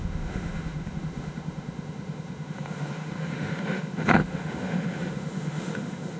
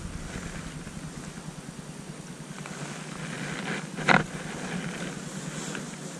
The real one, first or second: second